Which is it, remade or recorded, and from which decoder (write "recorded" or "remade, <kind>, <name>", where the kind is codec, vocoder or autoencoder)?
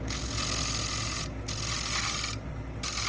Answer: recorded